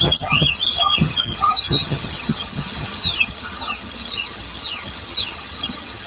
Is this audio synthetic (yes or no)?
yes